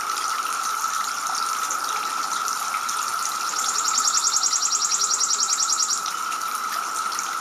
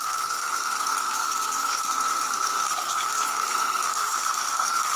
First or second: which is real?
first